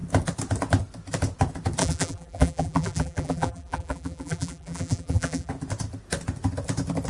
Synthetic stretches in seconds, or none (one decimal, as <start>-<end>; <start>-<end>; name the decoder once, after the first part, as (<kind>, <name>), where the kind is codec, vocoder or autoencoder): 1.8-5.5 (vocoder, BigVGAN v2)